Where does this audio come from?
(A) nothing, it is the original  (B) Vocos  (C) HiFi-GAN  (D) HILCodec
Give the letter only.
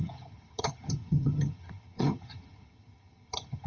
C